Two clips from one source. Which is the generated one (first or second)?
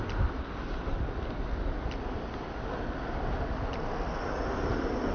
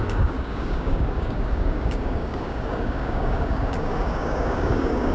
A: second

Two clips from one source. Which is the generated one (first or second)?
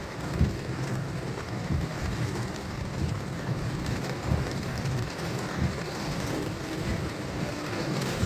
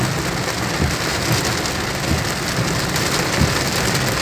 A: first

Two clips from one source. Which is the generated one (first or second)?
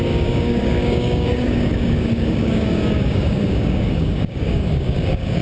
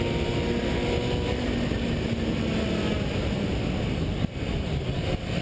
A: first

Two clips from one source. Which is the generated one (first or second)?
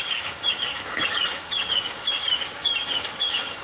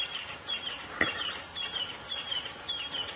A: first